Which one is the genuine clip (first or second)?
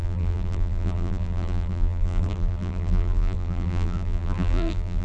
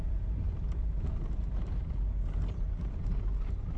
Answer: second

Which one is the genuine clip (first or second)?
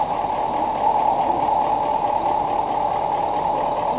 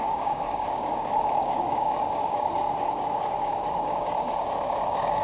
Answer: first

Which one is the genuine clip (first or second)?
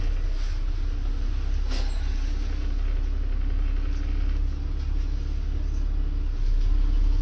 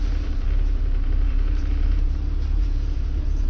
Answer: first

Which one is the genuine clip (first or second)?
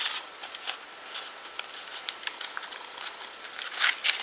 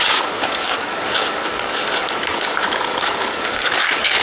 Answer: first